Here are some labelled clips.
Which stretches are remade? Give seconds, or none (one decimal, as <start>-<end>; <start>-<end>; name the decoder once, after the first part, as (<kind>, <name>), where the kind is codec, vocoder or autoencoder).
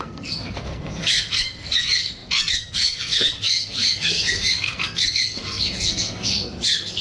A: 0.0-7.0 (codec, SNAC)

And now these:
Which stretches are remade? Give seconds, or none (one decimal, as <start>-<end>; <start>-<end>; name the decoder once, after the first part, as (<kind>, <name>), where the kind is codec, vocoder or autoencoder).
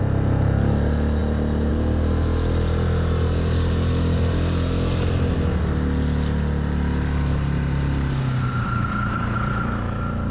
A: none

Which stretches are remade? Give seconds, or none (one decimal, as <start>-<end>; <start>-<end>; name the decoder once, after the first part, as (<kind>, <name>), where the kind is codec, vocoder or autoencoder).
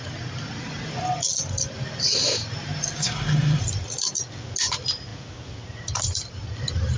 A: 3.0-3.6 (codec, SNAC)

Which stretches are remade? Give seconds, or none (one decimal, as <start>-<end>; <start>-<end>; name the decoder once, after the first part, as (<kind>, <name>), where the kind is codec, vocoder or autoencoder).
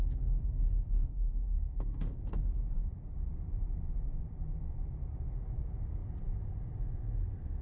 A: 0.0-2.2 (codec, SNAC)